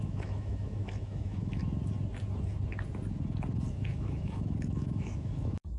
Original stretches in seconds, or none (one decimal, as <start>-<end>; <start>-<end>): 1.6-3.7